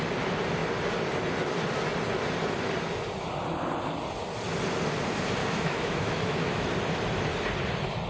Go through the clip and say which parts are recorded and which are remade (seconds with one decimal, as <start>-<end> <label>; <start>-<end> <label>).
0.0-5.4 recorded; 5.4-6.7 remade; 6.7-8.1 recorded